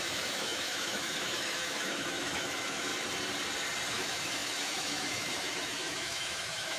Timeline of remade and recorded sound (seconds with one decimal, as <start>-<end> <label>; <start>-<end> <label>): 0.0-2.9 remade; 2.9-3.9 recorded; 3.9-6.8 remade